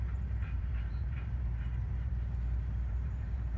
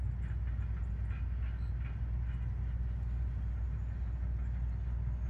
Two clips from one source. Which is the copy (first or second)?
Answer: first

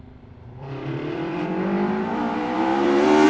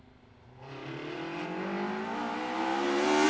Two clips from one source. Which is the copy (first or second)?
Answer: first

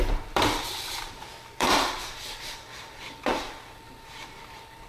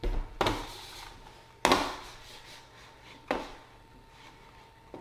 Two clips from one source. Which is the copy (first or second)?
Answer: first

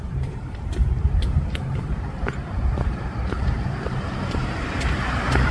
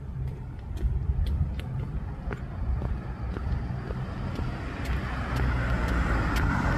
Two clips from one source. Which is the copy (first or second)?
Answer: first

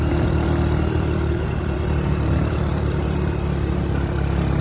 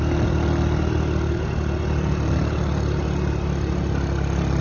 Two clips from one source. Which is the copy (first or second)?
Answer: first